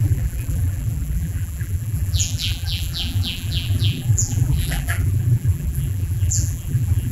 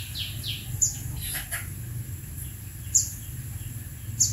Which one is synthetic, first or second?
first